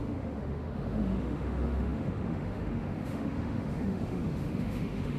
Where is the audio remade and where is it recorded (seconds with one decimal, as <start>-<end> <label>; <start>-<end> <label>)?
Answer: 0.0-5.2 remade